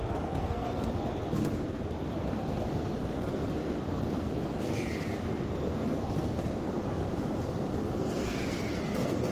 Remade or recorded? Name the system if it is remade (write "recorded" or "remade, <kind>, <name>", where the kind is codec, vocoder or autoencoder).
remade, codec, SNAC